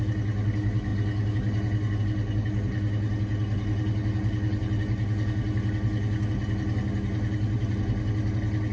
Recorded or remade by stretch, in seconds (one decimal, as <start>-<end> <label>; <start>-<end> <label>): 0.0-8.7 recorded